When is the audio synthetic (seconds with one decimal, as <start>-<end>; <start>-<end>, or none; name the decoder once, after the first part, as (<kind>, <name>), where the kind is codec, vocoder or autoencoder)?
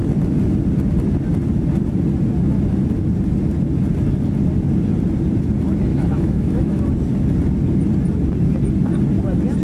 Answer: 5.9-6.8 (autoencoder, DAC-VAE)